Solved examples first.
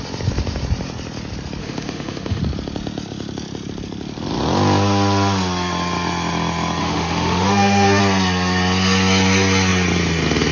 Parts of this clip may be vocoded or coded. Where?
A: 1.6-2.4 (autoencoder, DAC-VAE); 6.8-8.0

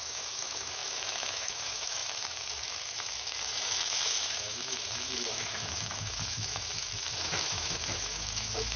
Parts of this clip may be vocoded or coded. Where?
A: 0.0-8.8 (autoencoder, DAC-VAE)